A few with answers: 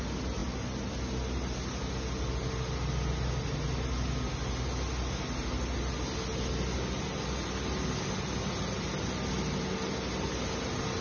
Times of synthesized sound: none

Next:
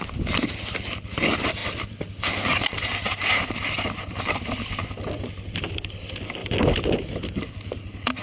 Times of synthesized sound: none

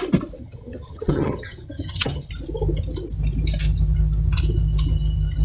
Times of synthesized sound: 0.4-2.3 (vocoder, HiFi-GAN)

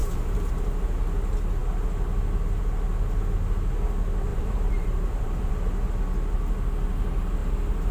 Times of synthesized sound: 0.0-0.5 (vocoder, BigVGAN v2); 4.3-5.5

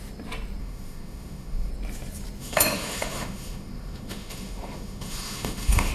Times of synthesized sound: 0.6-1.7 (autoencoder, DAC-VAE); 2.4-5.9

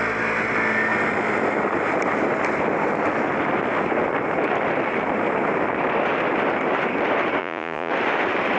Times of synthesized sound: 7.4-7.9 (vocoder, Vocos)

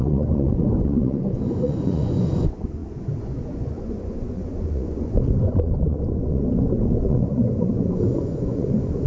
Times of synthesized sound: 0.0-9.1 (vocoder, Vocos)